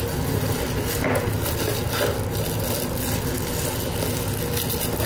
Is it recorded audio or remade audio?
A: recorded